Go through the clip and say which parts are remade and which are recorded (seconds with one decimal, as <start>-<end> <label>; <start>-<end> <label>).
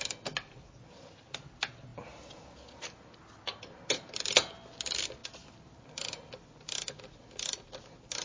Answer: 0.0-8.2 recorded